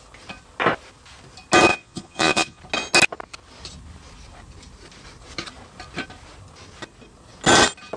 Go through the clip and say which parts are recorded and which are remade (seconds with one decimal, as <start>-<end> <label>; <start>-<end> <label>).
0.0-1.7 recorded; 1.7-2.6 remade; 2.6-8.0 recorded